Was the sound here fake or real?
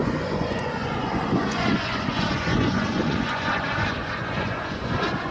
fake